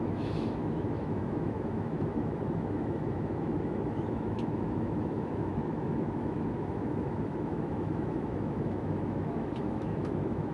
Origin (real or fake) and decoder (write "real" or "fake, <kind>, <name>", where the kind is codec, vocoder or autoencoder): fake, autoencoder, DAC-VAE